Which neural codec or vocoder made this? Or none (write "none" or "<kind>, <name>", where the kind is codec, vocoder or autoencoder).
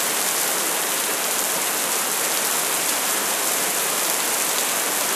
none